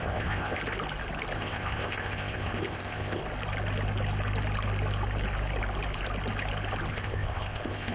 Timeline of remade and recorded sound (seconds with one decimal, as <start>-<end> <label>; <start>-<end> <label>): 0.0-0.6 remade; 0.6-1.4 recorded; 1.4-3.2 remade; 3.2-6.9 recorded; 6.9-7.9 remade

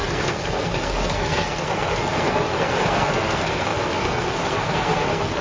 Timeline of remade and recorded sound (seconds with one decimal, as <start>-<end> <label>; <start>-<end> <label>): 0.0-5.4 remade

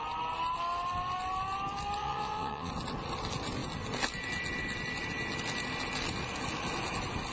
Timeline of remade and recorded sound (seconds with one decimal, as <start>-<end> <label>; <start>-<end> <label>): 0.0-2.0 recorded; 2.0-2.7 remade; 2.7-7.3 recorded